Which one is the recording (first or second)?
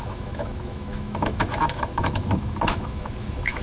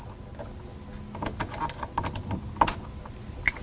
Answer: second